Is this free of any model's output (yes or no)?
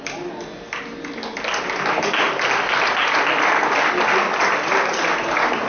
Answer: yes